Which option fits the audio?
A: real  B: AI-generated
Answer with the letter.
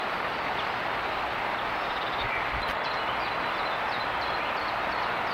A